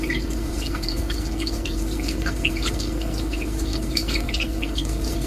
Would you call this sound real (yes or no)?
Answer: no